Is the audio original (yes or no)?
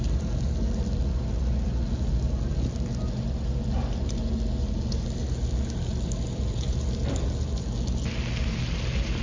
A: yes